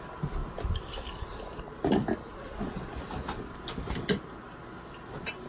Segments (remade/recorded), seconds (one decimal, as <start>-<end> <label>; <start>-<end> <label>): 0.0-5.5 recorded